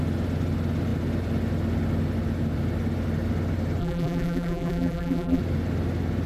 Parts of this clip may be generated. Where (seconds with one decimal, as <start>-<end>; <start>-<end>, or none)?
3.8-5.4